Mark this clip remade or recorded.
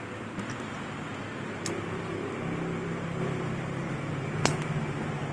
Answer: recorded